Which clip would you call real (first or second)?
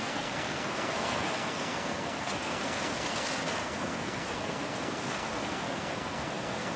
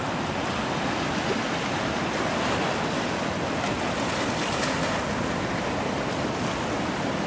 second